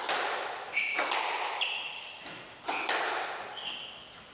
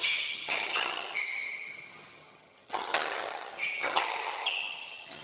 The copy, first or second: second